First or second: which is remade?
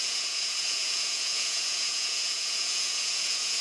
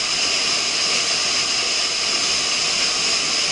first